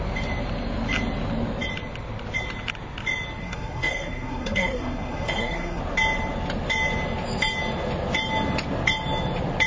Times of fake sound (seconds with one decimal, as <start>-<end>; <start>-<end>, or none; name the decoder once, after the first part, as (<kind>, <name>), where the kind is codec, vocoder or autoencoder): 3.4-5.8 (codec, SNAC)